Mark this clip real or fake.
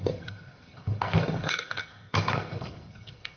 fake